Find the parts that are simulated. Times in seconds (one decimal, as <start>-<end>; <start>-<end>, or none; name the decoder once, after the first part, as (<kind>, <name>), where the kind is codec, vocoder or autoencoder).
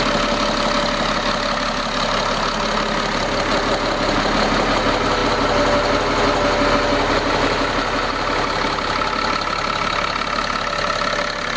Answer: none